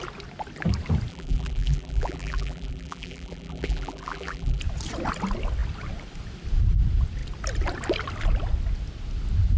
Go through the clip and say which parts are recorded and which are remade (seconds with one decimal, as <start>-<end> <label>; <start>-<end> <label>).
0.0-1.1 recorded; 1.1-4.6 remade; 4.6-9.6 recorded